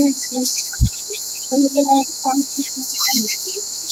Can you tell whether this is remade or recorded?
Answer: remade